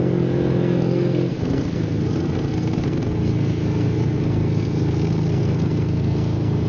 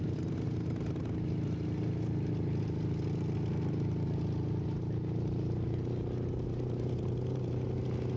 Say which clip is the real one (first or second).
second